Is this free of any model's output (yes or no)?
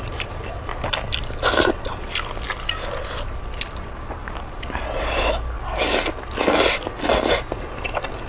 yes